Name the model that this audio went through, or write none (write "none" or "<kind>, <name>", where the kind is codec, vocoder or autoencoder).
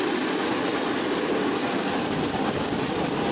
none